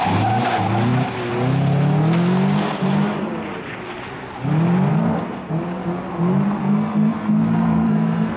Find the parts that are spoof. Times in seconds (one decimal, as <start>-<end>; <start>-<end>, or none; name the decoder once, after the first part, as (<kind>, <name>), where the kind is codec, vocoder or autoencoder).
4.9-5.5 (codec, SNAC); 6.6-8.4